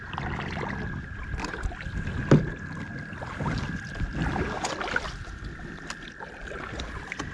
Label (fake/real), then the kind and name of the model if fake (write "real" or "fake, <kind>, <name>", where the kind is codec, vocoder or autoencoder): real